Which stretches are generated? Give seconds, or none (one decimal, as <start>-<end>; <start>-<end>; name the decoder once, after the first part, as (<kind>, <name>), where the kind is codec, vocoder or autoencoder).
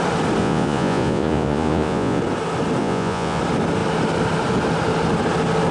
0.4-2.2 (vocoder, Vocos); 2.8-3.4